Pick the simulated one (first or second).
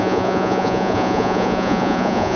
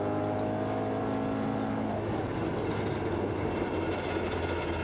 first